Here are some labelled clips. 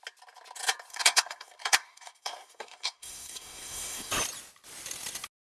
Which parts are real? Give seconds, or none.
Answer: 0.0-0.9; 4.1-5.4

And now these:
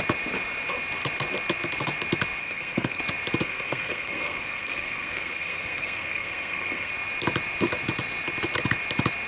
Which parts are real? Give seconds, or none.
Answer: 0.0-2.4; 3.0-3.4; 6.9-9.3

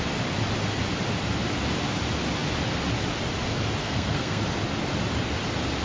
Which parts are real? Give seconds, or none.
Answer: 0.0-3.8; 4.4-5.8

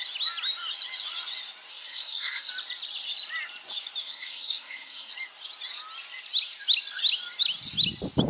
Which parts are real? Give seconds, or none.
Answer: 0.0-1.7; 2.5-4.0; 5.1-8.3

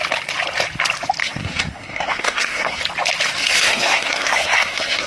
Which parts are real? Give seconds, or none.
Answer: 0.0-1.2; 2.8-3.4